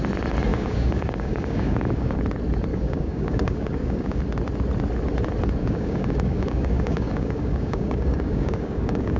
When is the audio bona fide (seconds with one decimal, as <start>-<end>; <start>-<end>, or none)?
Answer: 0.0-0.5; 2.2-2.7; 4.2-5.6